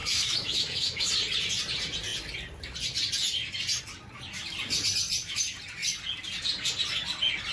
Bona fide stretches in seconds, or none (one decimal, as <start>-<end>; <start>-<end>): 1.1-7.5